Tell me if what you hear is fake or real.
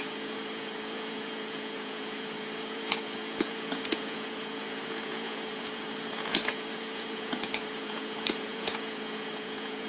fake